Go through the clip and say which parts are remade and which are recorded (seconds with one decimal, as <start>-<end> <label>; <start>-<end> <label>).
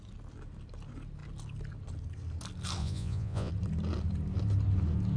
0.0-2.8 recorded; 2.8-3.5 remade; 3.5-5.2 recorded